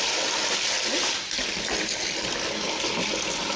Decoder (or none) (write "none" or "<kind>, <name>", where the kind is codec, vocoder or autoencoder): none